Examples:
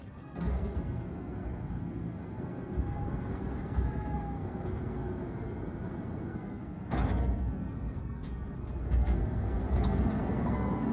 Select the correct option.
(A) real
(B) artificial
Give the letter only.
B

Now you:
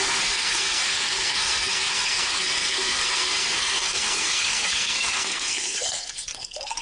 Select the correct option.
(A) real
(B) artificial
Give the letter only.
B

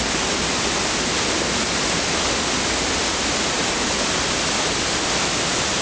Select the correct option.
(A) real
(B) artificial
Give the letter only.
A